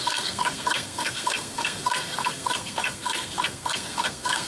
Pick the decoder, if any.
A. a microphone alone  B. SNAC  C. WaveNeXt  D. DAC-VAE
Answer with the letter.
B